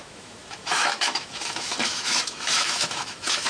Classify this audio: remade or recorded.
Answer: remade